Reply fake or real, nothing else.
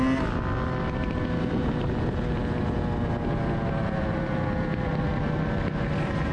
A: real